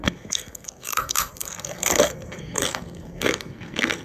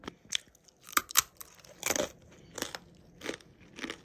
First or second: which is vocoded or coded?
first